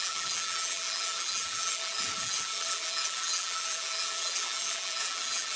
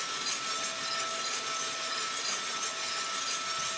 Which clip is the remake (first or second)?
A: first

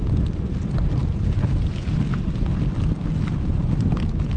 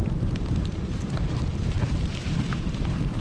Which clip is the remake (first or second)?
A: second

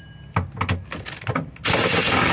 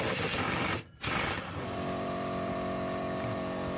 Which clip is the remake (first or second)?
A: second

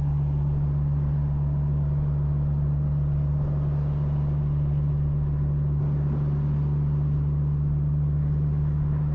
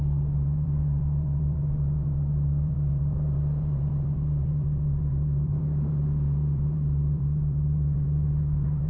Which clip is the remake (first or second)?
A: second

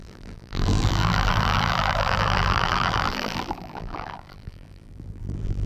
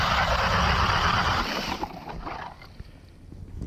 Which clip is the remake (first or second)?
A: first